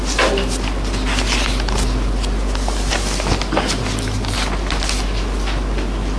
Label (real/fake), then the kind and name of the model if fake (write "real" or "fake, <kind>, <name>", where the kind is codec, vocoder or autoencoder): real